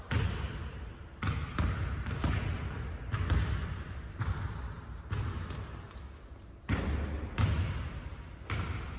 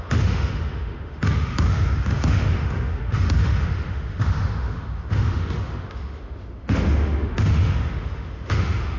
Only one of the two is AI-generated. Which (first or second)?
second